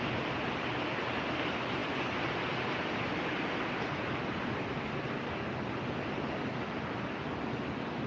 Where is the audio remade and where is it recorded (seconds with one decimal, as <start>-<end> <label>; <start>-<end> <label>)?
0.0-8.1 recorded